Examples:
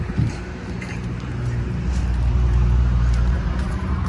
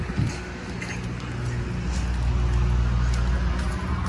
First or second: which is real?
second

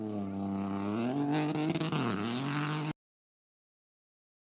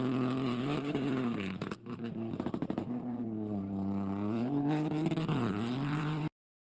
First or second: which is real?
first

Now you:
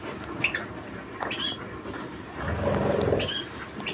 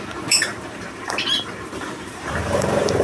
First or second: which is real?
first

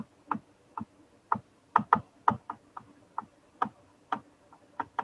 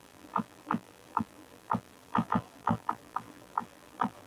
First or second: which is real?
first